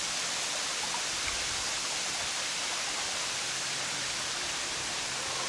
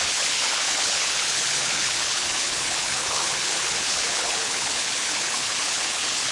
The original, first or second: first